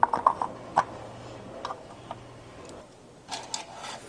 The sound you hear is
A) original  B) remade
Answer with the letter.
A